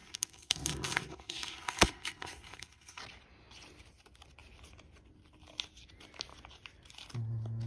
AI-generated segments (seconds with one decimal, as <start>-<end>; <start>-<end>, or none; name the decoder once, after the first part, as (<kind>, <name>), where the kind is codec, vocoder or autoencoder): 0.0-3.0 (codec, SNAC)